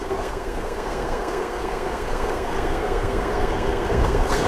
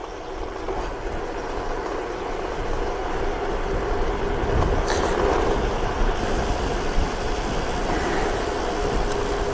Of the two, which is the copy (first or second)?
first